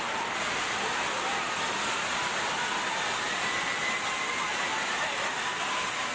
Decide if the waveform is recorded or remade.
recorded